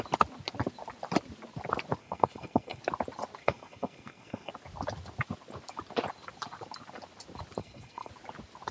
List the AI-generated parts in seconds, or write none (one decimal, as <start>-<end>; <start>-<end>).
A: 2.0-2.8; 3.4-4.5; 7.6-8.1